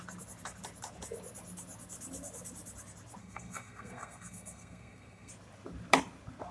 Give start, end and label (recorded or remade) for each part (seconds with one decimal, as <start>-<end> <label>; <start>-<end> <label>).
0.0-3.2 recorded; 3.2-5.3 remade; 5.3-6.5 recorded

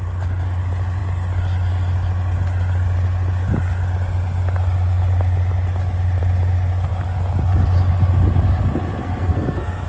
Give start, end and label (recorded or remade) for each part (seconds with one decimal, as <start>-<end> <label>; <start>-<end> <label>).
0.0-9.0 recorded; 9.0-9.9 remade

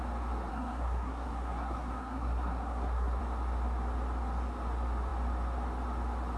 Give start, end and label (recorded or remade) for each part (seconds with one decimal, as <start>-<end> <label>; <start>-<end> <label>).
0.0-0.5 recorded; 0.5-3.2 remade; 3.2-6.4 recorded

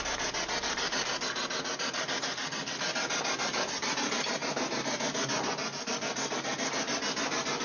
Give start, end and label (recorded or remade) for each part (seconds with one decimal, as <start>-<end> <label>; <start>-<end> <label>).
0.0-7.6 recorded

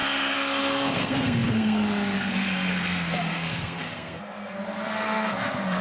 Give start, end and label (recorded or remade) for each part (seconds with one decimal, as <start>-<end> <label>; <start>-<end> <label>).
0.0-5.8 remade

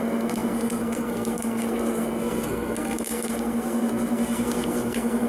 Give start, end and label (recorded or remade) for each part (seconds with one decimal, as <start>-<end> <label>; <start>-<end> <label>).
0.0-5.3 remade